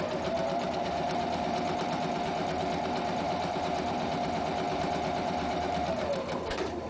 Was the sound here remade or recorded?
remade